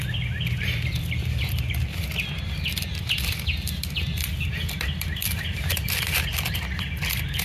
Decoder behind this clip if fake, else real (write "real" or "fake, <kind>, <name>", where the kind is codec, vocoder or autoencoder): real